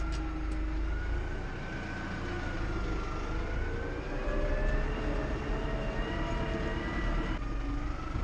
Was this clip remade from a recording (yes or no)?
no